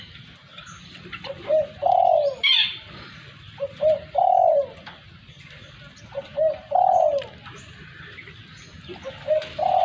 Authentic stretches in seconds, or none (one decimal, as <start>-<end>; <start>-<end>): 0.0-9.8

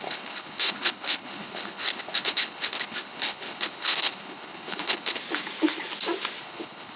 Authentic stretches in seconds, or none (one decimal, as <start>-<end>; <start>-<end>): 5.2-6.4

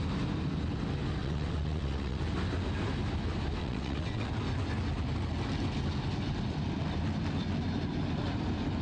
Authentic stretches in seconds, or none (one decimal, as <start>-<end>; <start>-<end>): 0.0-1.2; 2.2-3.6; 4.3-8.8

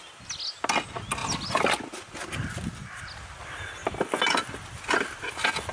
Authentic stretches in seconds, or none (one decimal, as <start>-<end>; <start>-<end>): 0.0-5.7

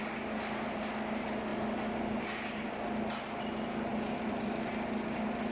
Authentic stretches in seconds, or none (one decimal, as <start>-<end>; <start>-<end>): 0.0-3.9; 4.7-5.5